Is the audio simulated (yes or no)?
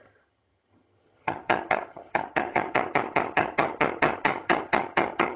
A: yes